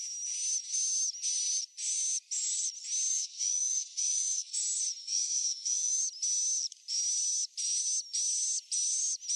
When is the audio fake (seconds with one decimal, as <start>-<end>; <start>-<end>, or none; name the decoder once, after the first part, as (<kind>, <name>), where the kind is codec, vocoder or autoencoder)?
3.1-4.6 (autoencoder, DAC-VAE); 5.0-6.0